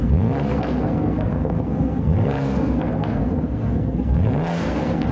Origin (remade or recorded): remade